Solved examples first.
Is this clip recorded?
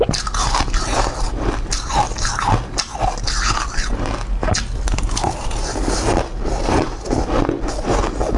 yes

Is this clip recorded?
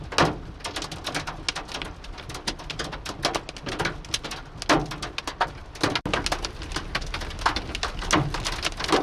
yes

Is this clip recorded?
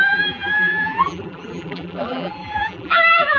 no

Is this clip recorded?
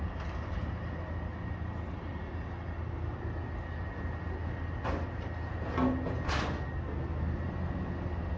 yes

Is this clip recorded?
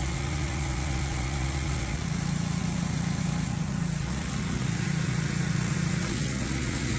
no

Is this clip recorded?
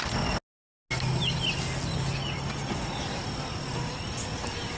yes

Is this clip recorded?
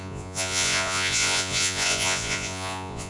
no